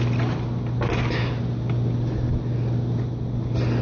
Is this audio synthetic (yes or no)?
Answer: no